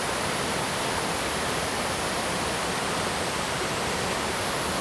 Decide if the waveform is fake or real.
real